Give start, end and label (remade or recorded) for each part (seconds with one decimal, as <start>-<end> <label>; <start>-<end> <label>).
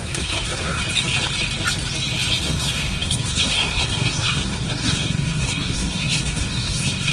0.0-0.8 remade; 0.8-2.4 recorded; 2.4-7.1 remade